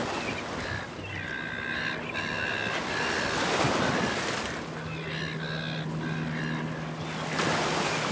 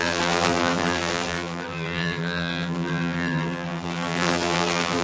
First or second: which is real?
first